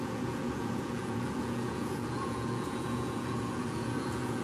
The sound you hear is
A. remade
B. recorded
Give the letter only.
A